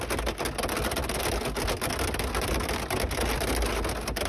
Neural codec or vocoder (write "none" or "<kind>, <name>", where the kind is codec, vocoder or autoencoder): none